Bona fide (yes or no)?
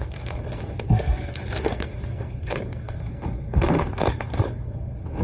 no